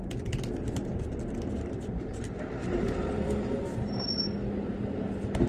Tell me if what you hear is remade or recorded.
recorded